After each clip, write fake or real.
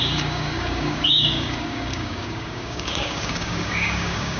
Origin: fake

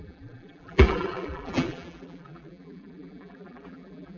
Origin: fake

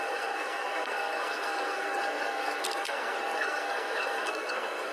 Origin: fake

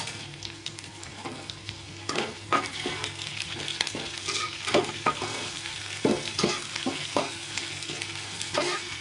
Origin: fake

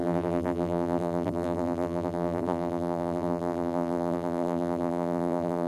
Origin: fake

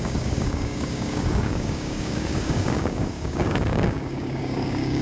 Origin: fake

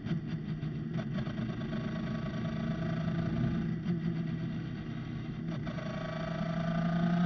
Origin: real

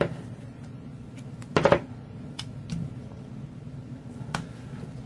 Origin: real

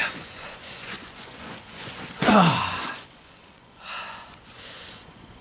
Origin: fake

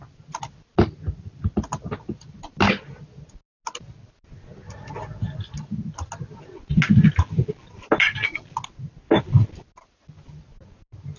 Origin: real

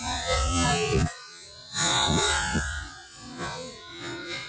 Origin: fake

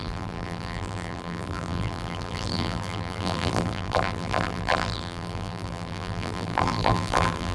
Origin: fake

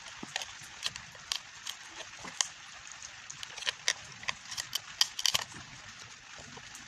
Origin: real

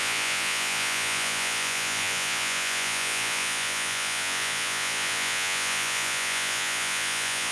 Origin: fake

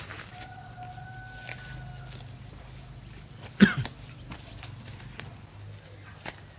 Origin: real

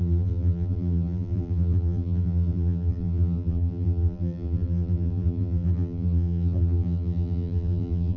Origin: fake